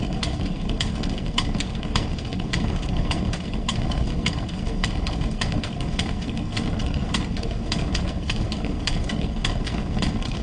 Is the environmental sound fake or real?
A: fake